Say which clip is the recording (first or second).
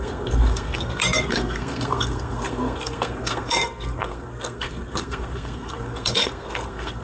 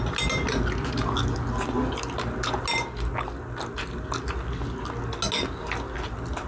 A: second